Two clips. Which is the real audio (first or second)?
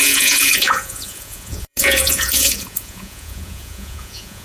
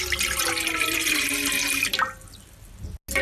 second